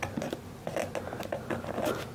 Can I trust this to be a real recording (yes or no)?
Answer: yes